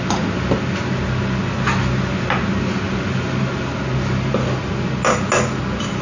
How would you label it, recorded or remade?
recorded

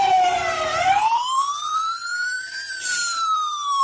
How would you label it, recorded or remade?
remade